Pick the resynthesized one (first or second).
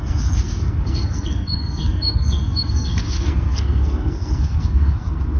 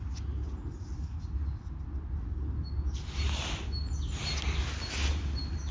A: first